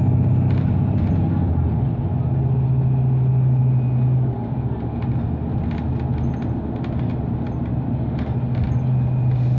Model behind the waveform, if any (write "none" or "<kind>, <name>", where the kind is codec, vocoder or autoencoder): none